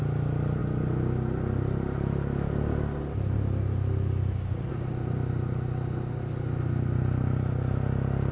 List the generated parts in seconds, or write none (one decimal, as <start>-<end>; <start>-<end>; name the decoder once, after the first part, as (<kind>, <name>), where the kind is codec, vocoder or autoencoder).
none